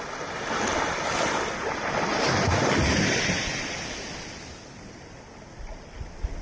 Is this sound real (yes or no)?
yes